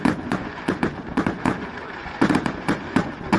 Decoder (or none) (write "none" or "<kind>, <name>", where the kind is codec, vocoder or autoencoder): vocoder, Vocos